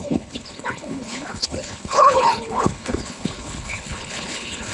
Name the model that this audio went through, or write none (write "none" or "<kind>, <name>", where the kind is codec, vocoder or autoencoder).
codec, HILCodec